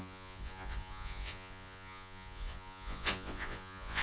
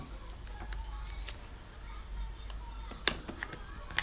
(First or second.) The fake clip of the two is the first